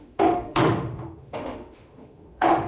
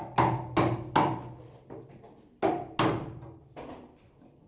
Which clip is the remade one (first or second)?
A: first